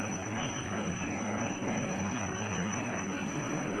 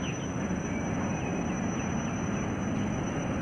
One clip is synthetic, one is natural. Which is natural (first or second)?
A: second